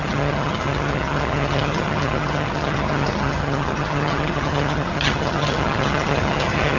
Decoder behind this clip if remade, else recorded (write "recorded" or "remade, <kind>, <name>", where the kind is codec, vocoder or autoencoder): remade, vocoder, HiFi-GAN